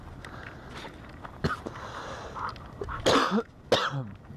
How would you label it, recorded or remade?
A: recorded